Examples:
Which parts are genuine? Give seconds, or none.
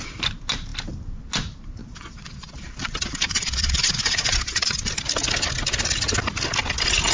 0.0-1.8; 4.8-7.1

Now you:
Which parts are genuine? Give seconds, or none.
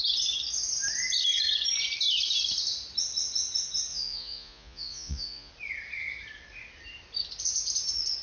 0.0-3.9; 5.5-8.2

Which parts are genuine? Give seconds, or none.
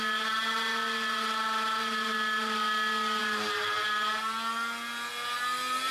0.0-5.9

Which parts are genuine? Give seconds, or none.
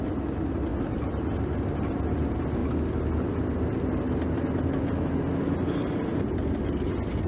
0.0-7.3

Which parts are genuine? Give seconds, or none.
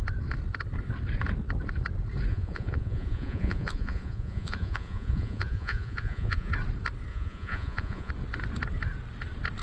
0.0-2.3; 6.5-7.1; 8.1-9.6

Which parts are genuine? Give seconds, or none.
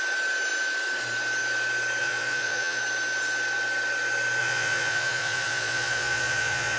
0.0-2.0; 2.8-4.4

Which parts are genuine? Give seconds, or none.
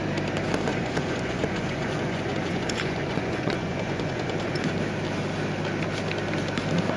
0.0-0.7; 4.7-7.0